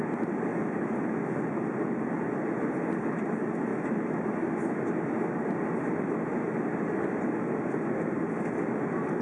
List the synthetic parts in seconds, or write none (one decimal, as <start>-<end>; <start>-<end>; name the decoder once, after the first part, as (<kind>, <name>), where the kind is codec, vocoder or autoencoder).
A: 0.5-2.4 (vocoder, BigVGAN v2)